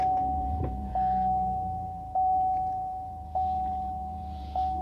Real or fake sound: fake